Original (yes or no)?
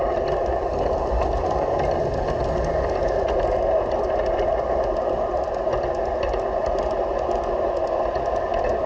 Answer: yes